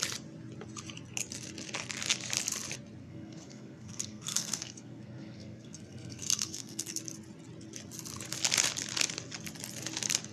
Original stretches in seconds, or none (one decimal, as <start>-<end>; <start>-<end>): 0.0-3.0; 7.0-10.3